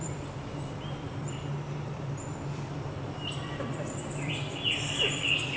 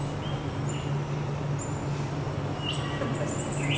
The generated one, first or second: first